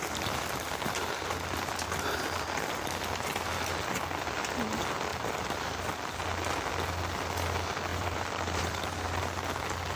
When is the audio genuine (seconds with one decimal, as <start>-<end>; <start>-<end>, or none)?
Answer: 0.0-5.1; 5.9-7.9; 9.2-10.0